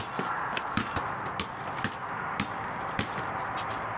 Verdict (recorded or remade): recorded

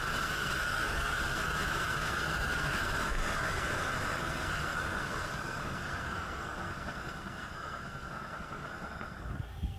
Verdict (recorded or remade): remade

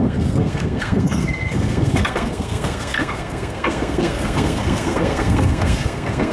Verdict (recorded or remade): remade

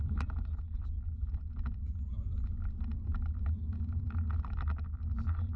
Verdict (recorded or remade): recorded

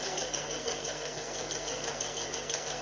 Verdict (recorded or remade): remade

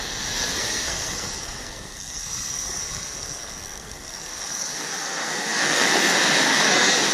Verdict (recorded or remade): remade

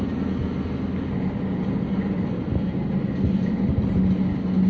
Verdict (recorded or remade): recorded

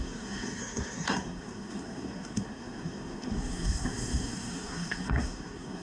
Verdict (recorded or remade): remade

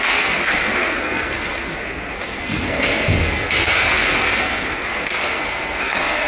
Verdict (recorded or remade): remade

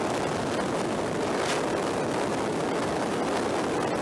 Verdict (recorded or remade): recorded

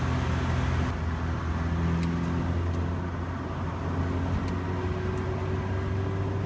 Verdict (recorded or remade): recorded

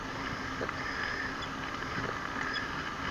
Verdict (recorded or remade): recorded